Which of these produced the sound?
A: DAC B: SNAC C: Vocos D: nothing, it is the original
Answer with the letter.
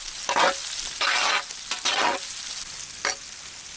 D